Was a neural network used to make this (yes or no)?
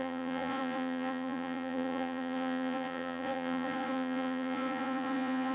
yes